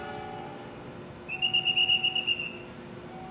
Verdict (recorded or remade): recorded